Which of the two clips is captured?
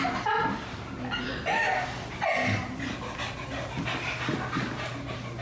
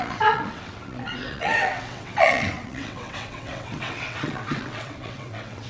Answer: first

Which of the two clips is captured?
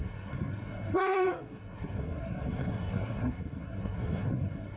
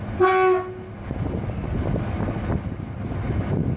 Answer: second